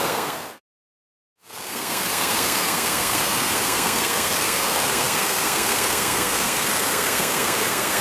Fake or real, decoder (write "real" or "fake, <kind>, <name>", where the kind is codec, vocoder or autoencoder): fake, codec, SNAC